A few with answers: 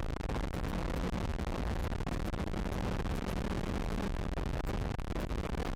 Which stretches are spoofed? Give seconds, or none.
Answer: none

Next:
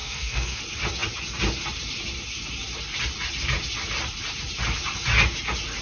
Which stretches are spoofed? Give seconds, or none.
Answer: 0.0-0.6

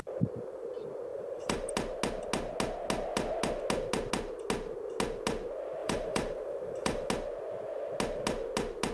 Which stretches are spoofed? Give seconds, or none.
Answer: 1.1-1.7; 5.8-7.1

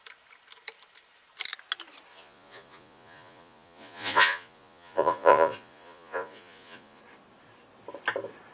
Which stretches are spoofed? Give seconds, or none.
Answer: 2.1-7.0

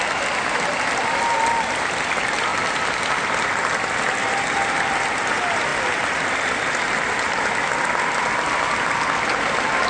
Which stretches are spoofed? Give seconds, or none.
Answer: none

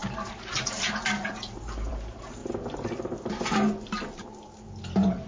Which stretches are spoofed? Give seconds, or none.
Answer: none

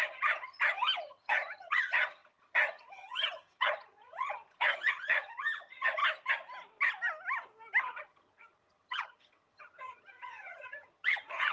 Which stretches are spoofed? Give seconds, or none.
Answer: 0.0-6.0; 7.8-11.5